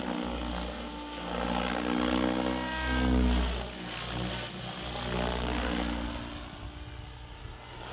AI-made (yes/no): no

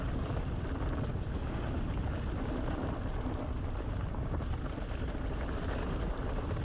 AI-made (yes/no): no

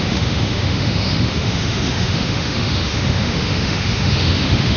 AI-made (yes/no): yes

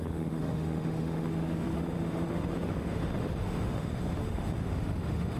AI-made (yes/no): yes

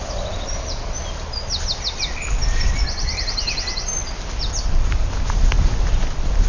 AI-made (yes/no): no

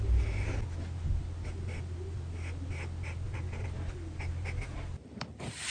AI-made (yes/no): no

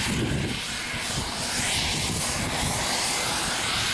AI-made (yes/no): no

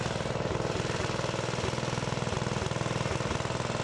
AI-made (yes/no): no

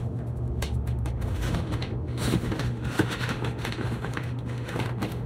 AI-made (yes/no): yes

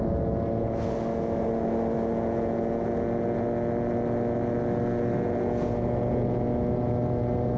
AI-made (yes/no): no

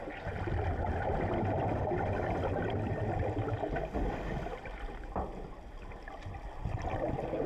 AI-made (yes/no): no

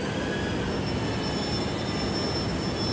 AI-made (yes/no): no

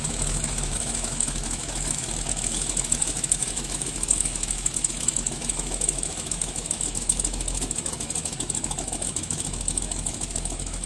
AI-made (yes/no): yes